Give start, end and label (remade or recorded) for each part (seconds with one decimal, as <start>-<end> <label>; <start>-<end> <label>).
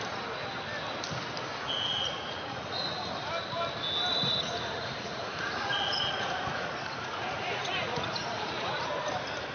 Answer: 0.0-1.5 recorded; 1.5-3.3 remade; 3.3-4.1 recorded; 4.1-8.9 remade; 8.9-9.5 recorded